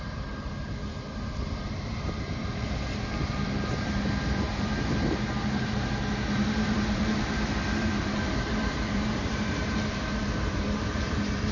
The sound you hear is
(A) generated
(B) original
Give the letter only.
A